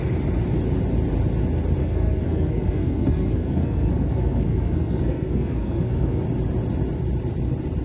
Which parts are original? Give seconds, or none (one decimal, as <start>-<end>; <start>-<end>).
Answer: 0.0-1.8; 6.2-7.8